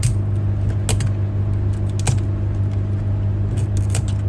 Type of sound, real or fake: real